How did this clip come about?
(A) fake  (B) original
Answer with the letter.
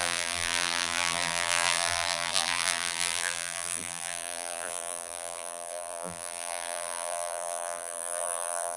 A